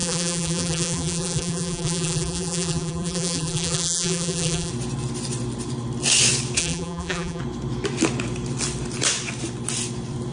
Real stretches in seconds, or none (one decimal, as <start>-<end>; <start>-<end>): 4.7-6.6; 7.4-10.3